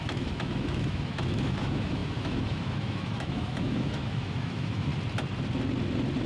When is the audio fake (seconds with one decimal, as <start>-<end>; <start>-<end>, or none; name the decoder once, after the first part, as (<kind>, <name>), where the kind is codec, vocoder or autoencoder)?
0.0-4.9 (autoencoder, DAC-VAE)